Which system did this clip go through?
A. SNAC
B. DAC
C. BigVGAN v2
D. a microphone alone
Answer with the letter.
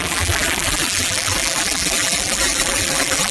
C